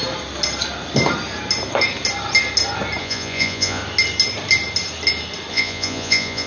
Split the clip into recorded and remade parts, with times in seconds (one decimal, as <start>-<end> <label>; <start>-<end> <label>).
0.0-3.0 recorded; 3.0-3.8 remade; 3.8-5.5 recorded; 5.5-6.5 remade